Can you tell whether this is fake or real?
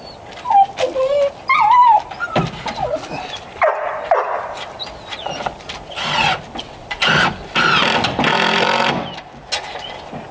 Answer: real